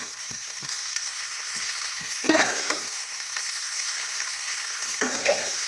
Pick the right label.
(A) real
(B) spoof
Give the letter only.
B